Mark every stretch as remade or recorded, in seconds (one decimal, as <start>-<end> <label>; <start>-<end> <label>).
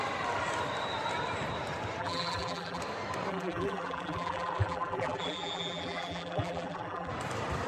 0.0-2.0 recorded; 2.0-2.8 remade; 2.8-3.3 recorded; 3.3-7.1 remade; 7.1-7.7 recorded